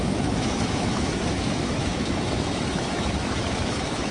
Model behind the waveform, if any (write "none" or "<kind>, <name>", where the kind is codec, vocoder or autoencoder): autoencoder, DAC-VAE